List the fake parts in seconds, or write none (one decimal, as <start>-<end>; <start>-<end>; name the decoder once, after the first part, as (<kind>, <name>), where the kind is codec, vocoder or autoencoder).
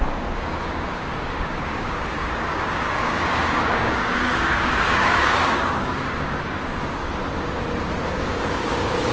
0.0-7.2 (codec, DAC); 8.1-9.1